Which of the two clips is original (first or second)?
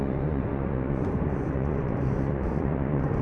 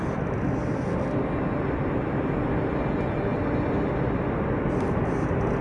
second